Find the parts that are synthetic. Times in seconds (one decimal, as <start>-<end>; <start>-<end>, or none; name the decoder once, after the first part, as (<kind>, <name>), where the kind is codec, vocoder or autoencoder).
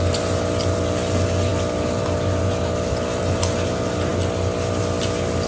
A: none